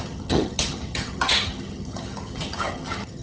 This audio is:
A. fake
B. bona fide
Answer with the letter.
A